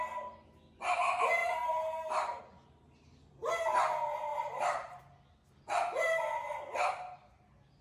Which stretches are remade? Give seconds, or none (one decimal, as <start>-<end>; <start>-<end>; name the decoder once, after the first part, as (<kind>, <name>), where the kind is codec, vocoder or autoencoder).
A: 1.4-2.4 (vocoder, BigVGAN v2); 4.3-5.0

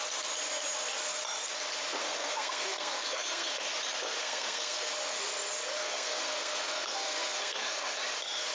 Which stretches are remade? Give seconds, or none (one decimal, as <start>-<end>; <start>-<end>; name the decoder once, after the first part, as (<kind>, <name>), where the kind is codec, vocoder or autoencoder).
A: 2.0-3.7 (codec, SNAC); 4.2-4.9; 5.8-8.0